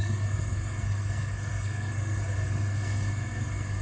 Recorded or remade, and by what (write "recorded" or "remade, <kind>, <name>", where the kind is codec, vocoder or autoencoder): remade, codec, SNAC